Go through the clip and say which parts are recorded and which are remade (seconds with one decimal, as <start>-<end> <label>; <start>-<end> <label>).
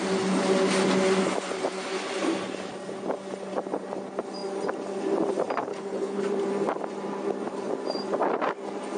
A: 0.0-5.7 recorded; 5.7-6.2 remade; 6.2-9.0 recorded